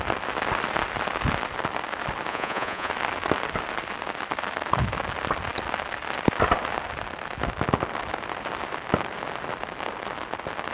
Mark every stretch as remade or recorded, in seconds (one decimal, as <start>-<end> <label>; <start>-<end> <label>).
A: 0.0-2.3 recorded; 2.3-2.9 remade; 2.9-10.7 recorded